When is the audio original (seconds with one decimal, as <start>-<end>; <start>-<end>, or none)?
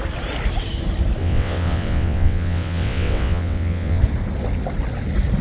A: 0.0-1.2; 4.0-5.4